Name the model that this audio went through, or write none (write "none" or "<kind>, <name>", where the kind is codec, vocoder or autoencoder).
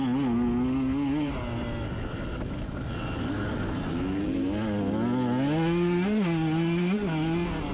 none